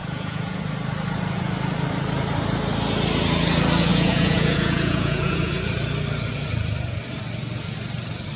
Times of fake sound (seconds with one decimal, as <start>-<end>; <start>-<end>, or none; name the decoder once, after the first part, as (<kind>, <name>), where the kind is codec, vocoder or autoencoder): 0.0-0.6 (vocoder, Vocos); 3.9-5.5